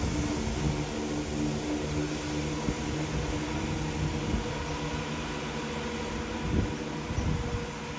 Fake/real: real